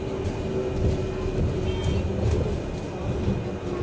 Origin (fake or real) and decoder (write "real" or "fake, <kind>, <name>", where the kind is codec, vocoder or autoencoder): real